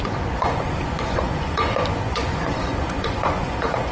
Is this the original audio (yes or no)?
no